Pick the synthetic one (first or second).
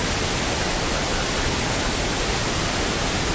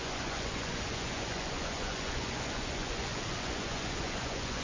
second